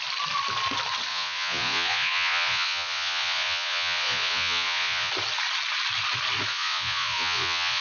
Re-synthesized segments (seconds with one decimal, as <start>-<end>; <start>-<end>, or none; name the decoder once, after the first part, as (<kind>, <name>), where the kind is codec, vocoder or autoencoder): 1.1-5.1 (vocoder, Vocos); 6.5-7.8